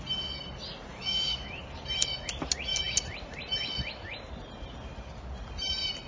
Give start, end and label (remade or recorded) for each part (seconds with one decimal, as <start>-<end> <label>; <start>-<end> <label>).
0.0-0.9 recorded; 0.9-1.6 remade; 1.6-6.1 recorded